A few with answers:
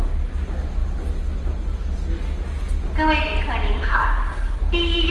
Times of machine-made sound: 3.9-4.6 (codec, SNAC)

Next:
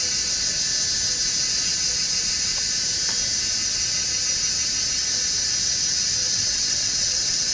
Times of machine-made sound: 6.2-7.5 (vocoder, WaveNeXt)

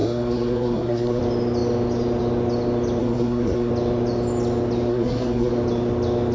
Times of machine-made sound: 0.0-1.2 (codec, SNAC); 3.0-3.7; 4.9-5.5